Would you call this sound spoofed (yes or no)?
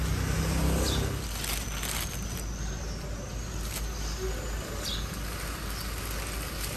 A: no